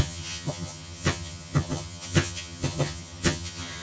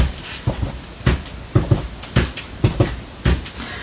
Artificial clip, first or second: first